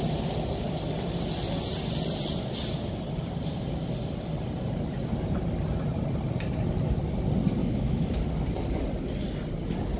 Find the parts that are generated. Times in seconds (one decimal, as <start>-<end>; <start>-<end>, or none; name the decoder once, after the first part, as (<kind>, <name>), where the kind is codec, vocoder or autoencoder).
7.6-8.2 (autoencoder, DAC-VAE)